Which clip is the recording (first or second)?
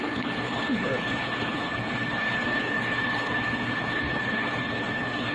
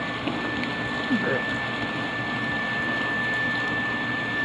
second